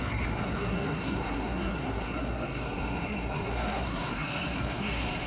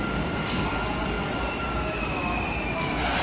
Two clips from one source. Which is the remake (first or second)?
first